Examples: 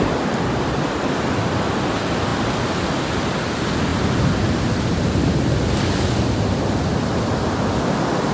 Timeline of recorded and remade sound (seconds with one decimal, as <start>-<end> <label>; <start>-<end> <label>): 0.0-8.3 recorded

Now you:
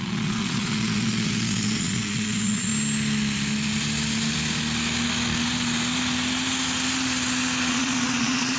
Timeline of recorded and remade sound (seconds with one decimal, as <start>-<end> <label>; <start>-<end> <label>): 0.0-2.7 remade; 2.7-7.7 recorded; 7.7-8.6 remade

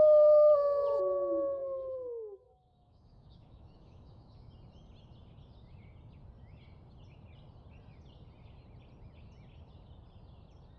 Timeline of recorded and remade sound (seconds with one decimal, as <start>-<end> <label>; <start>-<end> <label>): 0.0-1.6 recorded; 1.6-4.5 remade; 4.5-10.8 recorded